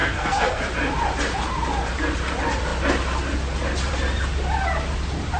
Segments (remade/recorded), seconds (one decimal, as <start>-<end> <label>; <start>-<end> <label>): 0.0-0.6 remade; 0.6-5.4 recorded